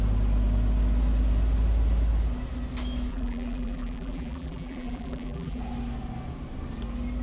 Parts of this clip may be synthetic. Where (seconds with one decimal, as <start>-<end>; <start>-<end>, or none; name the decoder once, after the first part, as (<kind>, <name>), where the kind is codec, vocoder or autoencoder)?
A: 3.1-5.6 (vocoder, BigVGAN v2)